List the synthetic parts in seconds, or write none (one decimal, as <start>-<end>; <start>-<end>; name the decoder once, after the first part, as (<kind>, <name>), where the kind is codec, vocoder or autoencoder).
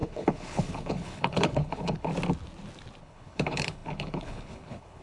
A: 0.0-2.1 (codec, HILCodec); 3.0-5.0